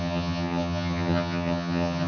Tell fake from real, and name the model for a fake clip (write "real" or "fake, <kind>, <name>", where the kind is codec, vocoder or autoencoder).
fake, vocoder, HiFi-GAN